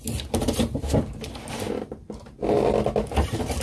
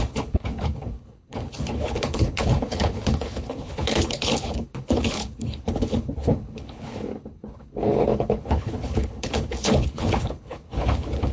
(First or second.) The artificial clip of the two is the second